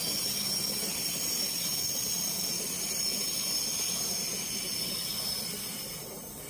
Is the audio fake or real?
real